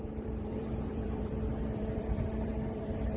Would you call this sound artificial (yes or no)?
yes